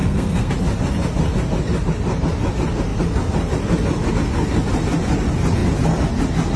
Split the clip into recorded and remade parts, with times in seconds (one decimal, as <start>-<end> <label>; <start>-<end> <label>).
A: 0.0-0.5 remade; 0.5-6.6 recorded